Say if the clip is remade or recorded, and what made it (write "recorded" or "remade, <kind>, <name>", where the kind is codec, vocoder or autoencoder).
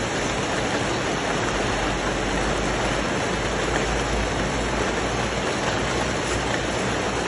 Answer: recorded